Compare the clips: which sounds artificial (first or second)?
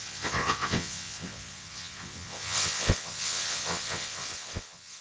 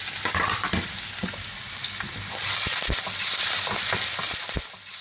first